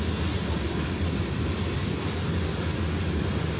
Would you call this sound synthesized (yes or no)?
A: no